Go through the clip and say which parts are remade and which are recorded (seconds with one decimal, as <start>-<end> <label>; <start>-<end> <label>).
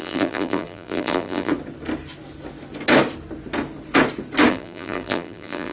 0.0-1.5 remade; 1.5-4.5 recorded; 4.5-5.7 remade